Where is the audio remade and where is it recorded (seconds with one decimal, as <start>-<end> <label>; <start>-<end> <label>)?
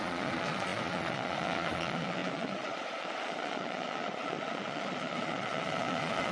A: 0.0-6.3 remade